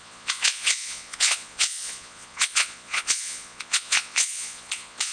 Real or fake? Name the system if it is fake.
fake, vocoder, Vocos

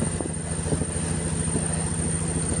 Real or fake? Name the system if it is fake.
real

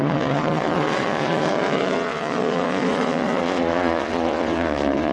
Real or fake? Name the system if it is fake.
fake, vocoder, Vocos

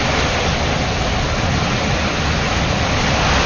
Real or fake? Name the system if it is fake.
real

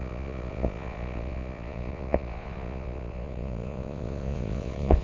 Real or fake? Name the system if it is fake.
fake, vocoder, Vocos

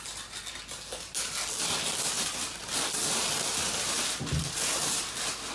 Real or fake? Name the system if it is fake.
real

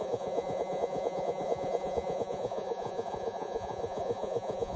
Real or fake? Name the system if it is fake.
fake, vocoder, Vocos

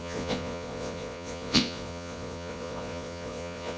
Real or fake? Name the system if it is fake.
fake, vocoder, Vocos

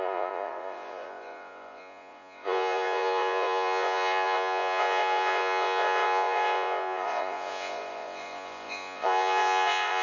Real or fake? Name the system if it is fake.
fake, vocoder, Vocos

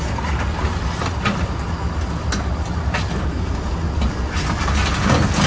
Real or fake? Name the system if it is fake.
real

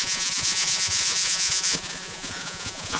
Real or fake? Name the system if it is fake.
fake, vocoder, Vocos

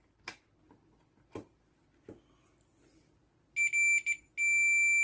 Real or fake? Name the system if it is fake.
real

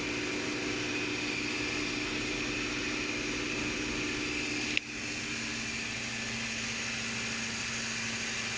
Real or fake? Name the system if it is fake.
real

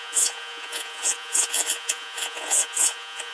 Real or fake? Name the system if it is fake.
fake, vocoder, Vocos